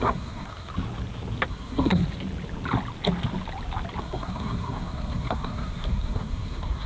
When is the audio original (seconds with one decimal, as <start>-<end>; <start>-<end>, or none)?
0.7-1.5; 2.0-4.0